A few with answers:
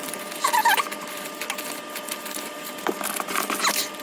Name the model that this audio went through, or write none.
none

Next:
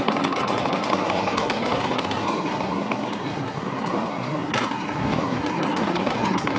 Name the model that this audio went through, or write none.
codec, SNAC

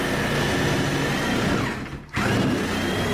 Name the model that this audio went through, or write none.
none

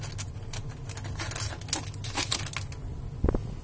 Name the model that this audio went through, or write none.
none